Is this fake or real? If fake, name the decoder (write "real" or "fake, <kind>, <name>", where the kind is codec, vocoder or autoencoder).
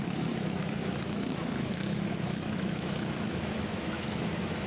fake, autoencoder, DAC-VAE